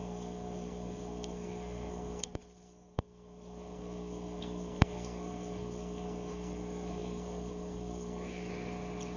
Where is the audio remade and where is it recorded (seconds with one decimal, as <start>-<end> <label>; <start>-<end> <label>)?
0.0-8.5 remade; 8.5-9.2 recorded